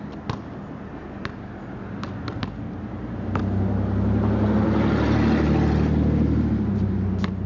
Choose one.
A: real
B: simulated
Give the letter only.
A